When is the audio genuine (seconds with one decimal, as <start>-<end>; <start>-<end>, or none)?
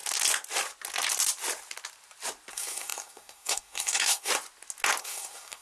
0.0-2.5; 4.3-5.0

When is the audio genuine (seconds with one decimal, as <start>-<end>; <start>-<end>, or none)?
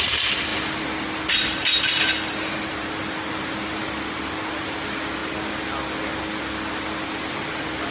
0.0-7.9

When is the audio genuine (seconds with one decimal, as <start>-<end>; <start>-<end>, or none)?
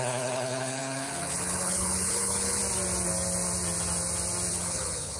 2.6-4.5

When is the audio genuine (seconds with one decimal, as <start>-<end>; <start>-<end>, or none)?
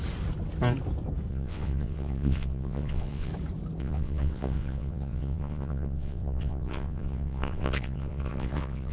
0.0-1.3; 3.3-3.8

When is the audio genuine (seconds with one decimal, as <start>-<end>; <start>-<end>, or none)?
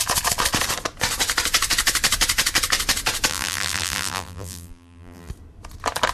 0.0-3.3; 5.3-6.1